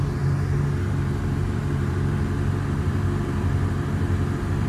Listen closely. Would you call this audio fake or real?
fake